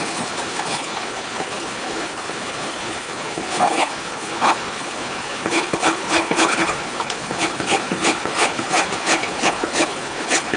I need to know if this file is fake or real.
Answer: fake